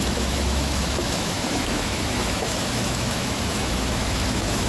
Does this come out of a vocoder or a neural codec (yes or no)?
yes